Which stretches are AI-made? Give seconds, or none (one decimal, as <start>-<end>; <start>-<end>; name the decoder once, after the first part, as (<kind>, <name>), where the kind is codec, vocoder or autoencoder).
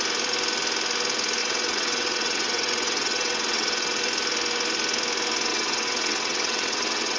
1.4-4.0 (vocoder, WaveNeXt); 5.5-7.2